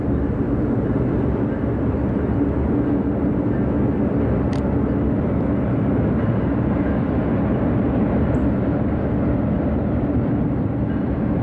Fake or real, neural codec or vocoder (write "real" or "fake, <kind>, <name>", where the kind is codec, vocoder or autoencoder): real